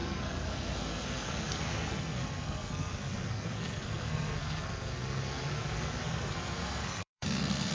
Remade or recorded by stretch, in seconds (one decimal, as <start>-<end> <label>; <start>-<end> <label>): 0.0-7.7 remade